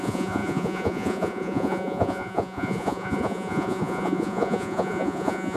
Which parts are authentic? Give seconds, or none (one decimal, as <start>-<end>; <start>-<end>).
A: none